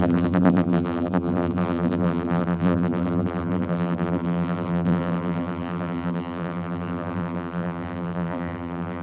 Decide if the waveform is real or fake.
fake